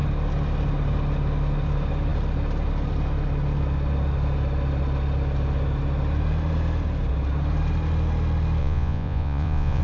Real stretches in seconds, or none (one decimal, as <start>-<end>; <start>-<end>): 0.0-8.6